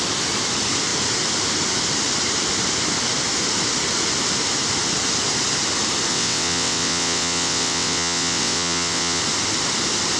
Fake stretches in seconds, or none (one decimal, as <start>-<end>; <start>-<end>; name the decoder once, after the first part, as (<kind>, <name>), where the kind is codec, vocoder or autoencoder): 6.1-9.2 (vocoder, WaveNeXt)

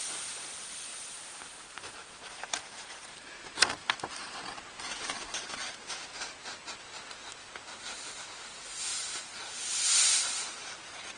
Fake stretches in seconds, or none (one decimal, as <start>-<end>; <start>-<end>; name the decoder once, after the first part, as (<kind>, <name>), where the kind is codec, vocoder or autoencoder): 0.9-3.3 (vocoder, BigVGAN v2)

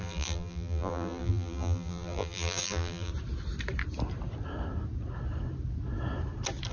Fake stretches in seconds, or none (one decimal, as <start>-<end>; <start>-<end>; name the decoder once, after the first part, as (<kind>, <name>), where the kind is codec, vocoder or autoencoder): 0.0-3.1 (vocoder, BigVGAN v2)

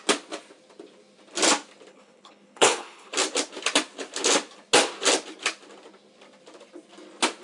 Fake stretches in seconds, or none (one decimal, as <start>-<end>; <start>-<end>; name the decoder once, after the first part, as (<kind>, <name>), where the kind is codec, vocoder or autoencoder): 1.9-3.1 (codec, HILCodec)